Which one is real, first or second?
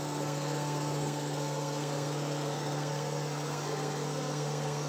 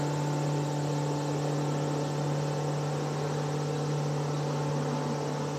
second